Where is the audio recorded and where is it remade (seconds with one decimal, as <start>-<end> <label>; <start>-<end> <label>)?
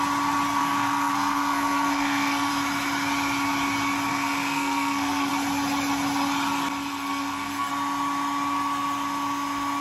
0.0-0.6 recorded; 0.6-2.5 remade; 2.5-4.1 recorded; 4.1-5.3 remade; 5.3-6.9 recorded; 6.9-7.7 remade; 7.7-9.8 recorded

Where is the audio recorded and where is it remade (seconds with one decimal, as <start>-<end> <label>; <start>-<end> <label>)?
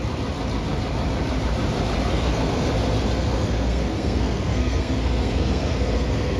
0.0-2.1 recorded; 2.1-2.7 remade; 2.7-3.2 recorded; 3.2-6.4 remade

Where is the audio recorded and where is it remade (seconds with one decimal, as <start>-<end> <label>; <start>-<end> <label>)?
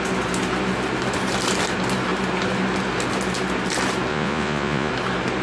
0.0-4.1 recorded; 4.1-4.9 remade; 4.9-5.4 recorded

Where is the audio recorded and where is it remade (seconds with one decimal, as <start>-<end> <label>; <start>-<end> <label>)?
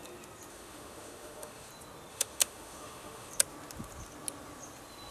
0.0-0.5 recorded; 0.5-1.7 remade; 1.7-2.1 recorded; 2.1-3.3 remade; 3.3-5.1 recorded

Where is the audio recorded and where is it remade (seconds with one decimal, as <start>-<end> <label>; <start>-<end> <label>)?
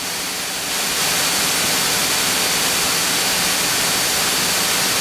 0.0-5.0 recorded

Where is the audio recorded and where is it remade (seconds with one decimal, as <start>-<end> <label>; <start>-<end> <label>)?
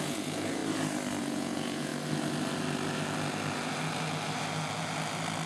0.0-0.6 remade; 0.6-1.2 recorded; 1.2-1.9 remade; 1.9-5.5 recorded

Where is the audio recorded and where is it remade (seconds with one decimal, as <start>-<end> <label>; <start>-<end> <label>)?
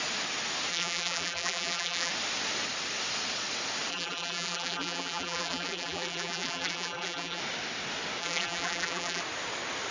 0.0-0.7 recorded; 0.7-2.1 remade; 2.1-3.9 recorded; 3.9-7.4 remade; 7.4-8.2 recorded; 8.2-9.2 remade; 9.2-9.9 recorded